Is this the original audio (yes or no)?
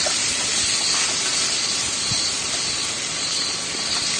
yes